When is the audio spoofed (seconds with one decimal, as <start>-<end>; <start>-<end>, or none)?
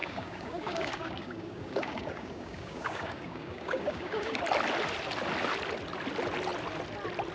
0.0-4.4